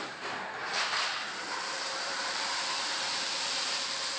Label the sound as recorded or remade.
remade